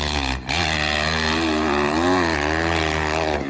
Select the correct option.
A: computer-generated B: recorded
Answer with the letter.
B